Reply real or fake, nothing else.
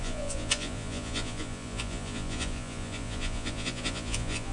fake